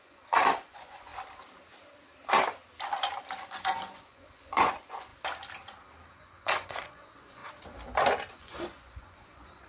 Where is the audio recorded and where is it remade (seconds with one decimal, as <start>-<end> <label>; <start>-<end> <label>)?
0.0-1.1 remade; 1.1-3.4 recorded; 3.4-5.1 remade; 5.1-6.2 recorded; 6.2-7.4 remade; 7.4-8.3 recorded; 8.3-9.7 remade